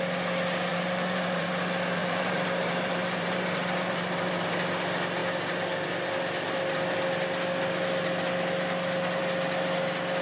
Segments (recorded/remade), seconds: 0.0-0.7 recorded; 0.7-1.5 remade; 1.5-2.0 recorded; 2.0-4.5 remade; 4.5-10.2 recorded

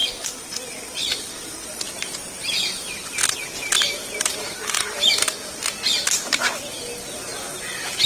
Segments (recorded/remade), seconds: 0.0-1.8 remade; 1.8-8.1 recorded

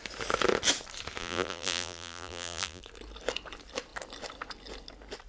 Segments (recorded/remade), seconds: 0.0-1.2 recorded; 1.2-2.8 remade; 2.8-5.3 recorded